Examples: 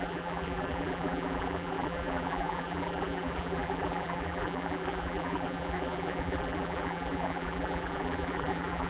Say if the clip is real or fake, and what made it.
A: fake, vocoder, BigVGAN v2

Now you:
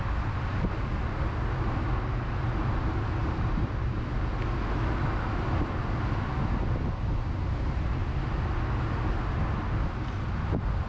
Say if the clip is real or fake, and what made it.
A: real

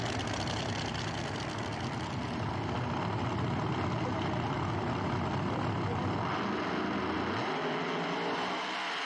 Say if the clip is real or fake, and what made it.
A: real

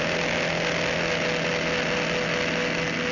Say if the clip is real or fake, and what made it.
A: real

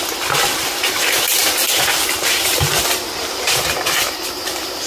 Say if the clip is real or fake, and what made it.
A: real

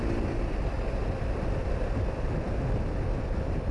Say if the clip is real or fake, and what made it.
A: real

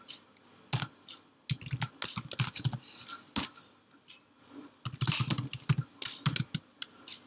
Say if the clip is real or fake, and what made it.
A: real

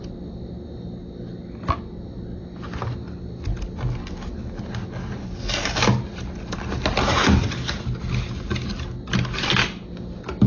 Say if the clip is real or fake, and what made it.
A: real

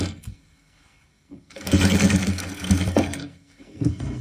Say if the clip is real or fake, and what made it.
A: fake, codec, SNAC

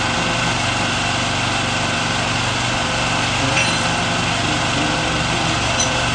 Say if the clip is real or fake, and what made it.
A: real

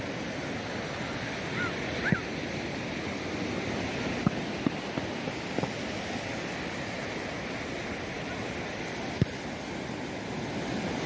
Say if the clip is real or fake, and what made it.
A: real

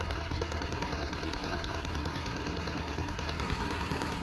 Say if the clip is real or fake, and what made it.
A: fake, codec, SNAC